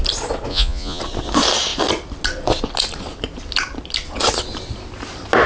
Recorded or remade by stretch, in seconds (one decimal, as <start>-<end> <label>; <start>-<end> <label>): 0.0-0.5 recorded; 0.5-1.0 remade; 1.0-5.5 recorded